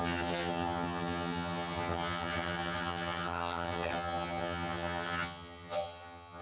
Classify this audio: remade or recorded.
remade